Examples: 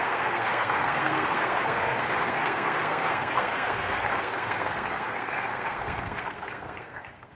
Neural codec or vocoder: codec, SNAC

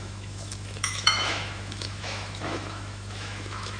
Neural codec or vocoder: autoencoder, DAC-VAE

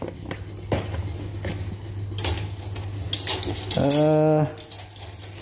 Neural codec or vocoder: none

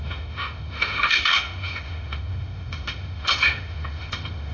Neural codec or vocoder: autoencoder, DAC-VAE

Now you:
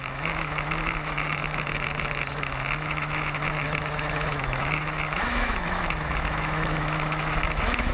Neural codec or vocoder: autoencoder, DAC-VAE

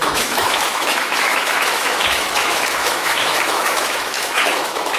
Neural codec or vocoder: autoencoder, DAC-VAE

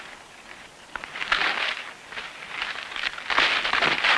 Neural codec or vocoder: none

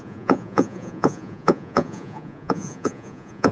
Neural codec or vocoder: vocoder, Vocos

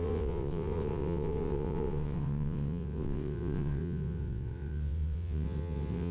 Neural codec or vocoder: vocoder, WaveNeXt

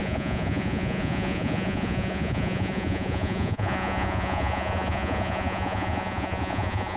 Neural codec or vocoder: vocoder, Vocos